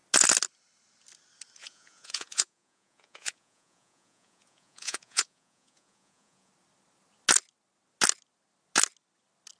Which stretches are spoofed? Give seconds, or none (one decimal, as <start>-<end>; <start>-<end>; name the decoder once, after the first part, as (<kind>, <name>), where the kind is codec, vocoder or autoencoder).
1.6-6.5 (vocoder, Vocos)